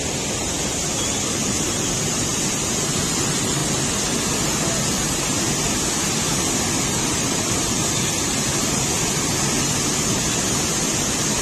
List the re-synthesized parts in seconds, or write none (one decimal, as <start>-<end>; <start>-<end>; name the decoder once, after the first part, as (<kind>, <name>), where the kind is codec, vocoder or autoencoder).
none